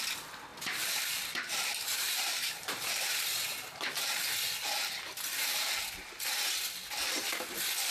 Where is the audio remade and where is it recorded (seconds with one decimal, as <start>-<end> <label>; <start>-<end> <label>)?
0.0-0.5 recorded; 0.5-4.4 remade; 4.4-5.4 recorded; 5.4-6.2 remade; 6.2-7.9 recorded